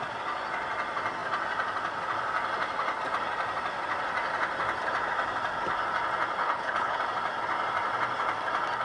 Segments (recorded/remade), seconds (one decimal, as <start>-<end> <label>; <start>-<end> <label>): 0.0-6.4 recorded; 6.4-7.0 remade; 7.0-8.8 recorded